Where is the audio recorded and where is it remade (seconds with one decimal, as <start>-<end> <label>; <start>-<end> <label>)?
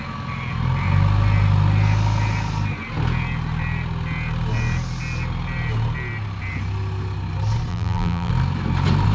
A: 0.0-7.7 recorded; 7.7-8.3 remade; 8.3-9.1 recorded